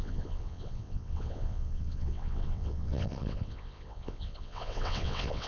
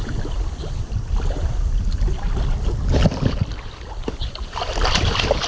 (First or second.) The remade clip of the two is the first